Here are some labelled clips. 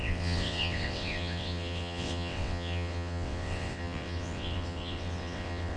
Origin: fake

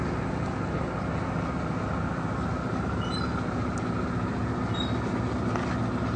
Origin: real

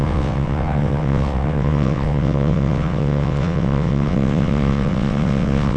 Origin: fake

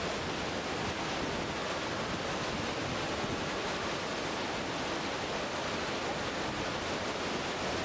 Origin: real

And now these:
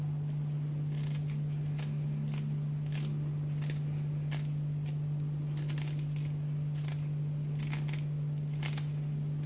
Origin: real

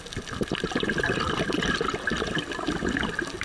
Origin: real